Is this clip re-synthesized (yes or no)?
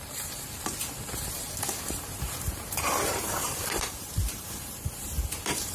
yes